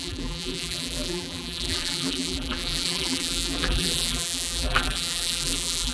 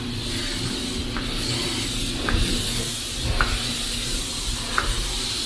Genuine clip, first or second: second